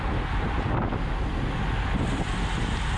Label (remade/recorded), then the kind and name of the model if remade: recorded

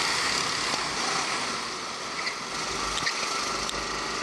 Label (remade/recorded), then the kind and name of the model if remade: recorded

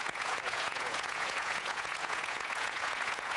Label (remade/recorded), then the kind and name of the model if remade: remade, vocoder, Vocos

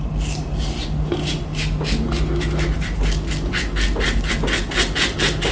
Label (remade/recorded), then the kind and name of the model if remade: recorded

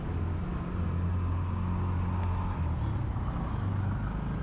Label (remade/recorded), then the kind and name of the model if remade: recorded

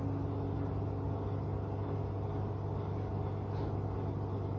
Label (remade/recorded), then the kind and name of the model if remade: recorded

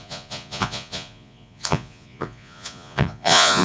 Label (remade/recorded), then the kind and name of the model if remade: remade, vocoder, Vocos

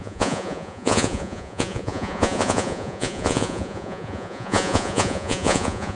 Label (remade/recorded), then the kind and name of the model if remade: remade, vocoder, Vocos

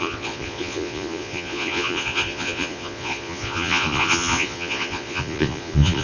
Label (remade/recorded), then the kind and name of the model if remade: remade, vocoder, Vocos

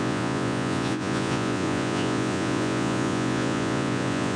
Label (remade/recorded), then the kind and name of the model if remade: remade, vocoder, Vocos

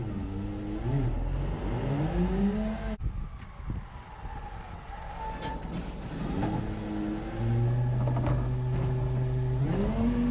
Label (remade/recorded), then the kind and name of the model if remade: recorded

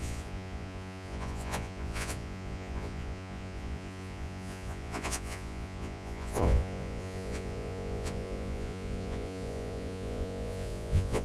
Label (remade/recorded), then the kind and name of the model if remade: remade, vocoder, Vocos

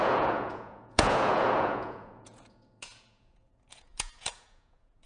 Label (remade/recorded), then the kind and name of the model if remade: remade, vocoder, Vocos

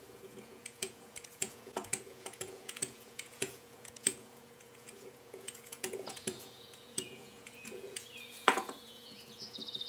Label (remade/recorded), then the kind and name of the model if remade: remade, vocoder, Vocos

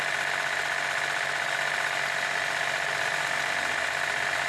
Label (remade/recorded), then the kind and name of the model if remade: recorded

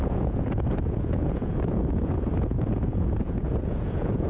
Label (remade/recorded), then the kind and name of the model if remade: remade, vocoder, Vocos